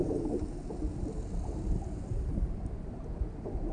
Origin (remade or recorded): recorded